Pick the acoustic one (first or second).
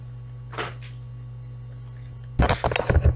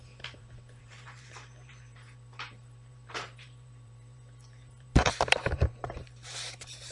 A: first